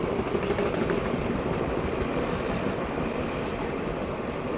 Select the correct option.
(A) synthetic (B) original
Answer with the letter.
B